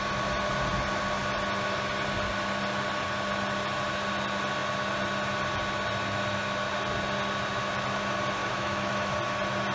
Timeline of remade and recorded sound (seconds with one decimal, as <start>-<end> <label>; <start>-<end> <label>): 0.0-8.4 recorded; 8.4-9.1 remade; 9.1-9.7 recorded

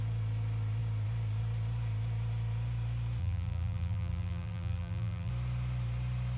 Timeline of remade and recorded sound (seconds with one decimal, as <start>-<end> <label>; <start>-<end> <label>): 0.0-3.2 recorded; 3.2-5.3 remade; 5.3-6.4 recorded

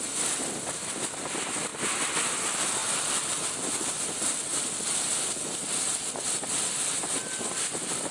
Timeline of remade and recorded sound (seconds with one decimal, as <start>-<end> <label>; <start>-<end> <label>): 0.0-8.1 recorded